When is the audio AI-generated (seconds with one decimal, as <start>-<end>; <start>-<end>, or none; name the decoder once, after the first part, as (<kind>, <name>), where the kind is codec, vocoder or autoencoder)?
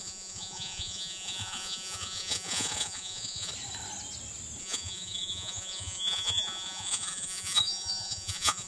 0.0-3.5 (vocoder, Vocos); 4.6-8.7